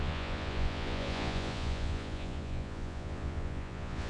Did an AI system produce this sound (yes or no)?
yes